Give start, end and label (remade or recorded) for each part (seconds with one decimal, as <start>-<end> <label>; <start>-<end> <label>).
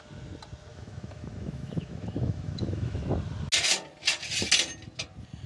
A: 0.0-0.7 recorded; 0.7-3.0 remade; 3.0-5.5 recorded